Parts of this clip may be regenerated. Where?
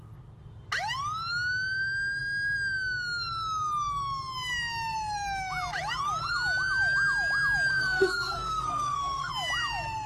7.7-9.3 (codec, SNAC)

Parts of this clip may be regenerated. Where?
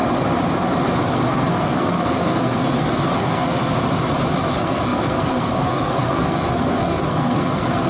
1.0-3.6 (codec, SNAC); 4.5-7.9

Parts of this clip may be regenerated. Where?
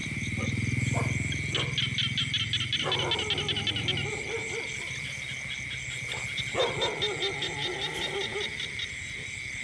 none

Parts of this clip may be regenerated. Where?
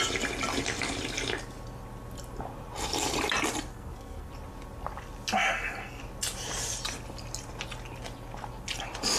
3.7-4.3 (codec, SNAC); 5.4-6.0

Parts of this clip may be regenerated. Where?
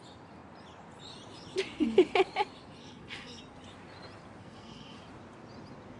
2.8-3.4 (codec, SNAC); 4.4-5.0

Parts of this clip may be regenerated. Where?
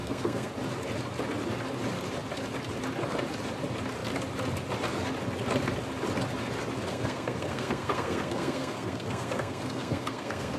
0.0-0.5 (codec, SNAC); 6.9-10.6